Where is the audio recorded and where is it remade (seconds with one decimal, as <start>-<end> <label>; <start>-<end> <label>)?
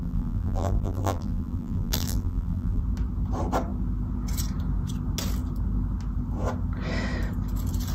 0.0-2.8 remade; 2.8-7.9 recorded